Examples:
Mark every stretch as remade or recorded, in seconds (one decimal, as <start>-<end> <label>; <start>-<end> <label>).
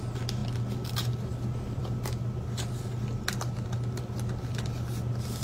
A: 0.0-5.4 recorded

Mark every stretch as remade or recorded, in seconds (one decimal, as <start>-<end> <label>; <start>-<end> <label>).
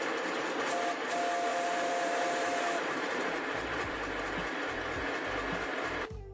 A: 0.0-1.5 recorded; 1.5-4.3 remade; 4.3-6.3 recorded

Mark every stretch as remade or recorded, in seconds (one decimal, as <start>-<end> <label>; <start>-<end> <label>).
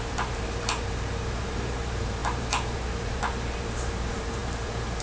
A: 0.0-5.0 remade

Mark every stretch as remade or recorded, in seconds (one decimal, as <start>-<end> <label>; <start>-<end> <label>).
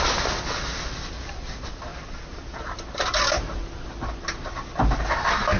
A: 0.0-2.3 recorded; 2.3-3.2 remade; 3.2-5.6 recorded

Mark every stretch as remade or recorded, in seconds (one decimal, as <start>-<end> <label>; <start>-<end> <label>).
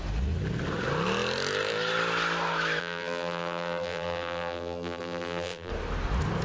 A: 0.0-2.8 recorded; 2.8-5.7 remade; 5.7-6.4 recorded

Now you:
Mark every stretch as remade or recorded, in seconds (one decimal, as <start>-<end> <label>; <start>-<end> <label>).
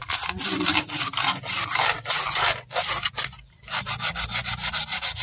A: 0.0-5.2 remade